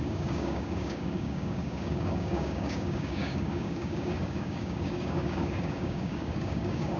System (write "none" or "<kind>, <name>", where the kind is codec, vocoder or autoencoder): codec, DAC